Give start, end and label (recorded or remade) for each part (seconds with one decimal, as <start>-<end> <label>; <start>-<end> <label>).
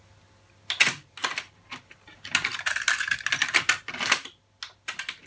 0.0-5.3 recorded